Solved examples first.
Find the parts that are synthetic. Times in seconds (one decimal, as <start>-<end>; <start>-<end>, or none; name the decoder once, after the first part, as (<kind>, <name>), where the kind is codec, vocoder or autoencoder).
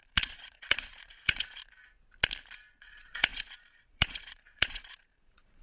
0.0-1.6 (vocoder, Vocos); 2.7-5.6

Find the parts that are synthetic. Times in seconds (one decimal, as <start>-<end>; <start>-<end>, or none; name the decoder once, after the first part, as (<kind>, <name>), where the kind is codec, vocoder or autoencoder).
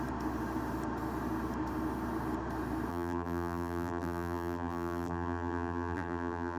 2.9-6.6 (vocoder, BigVGAN v2)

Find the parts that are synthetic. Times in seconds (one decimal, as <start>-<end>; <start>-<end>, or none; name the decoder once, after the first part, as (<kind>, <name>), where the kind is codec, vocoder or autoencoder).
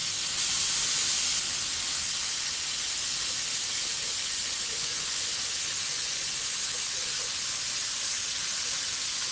4.2-5.4 (vocoder, Vocos); 5.9-6.5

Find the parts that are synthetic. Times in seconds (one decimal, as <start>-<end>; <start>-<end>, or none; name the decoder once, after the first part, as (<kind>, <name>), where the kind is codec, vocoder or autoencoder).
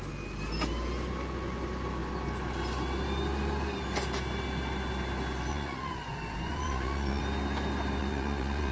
5.5-7.2 (vocoder, Vocos); 8.0-8.7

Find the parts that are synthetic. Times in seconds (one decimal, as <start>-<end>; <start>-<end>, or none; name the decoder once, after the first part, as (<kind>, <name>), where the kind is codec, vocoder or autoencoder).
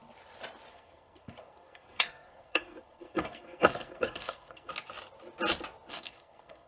0.7-4.7 (codec, SNAC); 5.9-6.7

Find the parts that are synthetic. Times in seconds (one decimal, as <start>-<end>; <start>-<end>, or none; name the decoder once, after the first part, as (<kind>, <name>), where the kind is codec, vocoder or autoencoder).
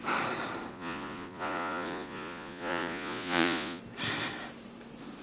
0.7-3.8 (vocoder, Vocos)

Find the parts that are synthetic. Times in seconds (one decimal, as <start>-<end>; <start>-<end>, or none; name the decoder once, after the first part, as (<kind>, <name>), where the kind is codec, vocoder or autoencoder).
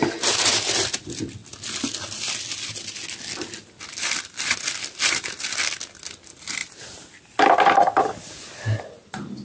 none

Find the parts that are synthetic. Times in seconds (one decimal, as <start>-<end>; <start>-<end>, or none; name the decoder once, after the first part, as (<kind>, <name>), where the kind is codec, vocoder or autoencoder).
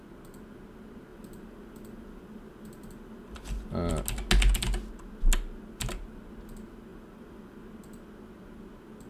1.1-3.9 (vocoder, BigVGAN v2); 6.9-7.7